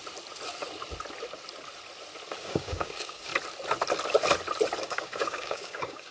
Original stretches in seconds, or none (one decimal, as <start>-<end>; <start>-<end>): 0.0-2.4; 3.3-4.8